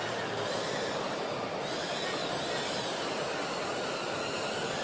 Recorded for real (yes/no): no